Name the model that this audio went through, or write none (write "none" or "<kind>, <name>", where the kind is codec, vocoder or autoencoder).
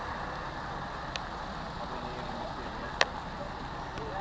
none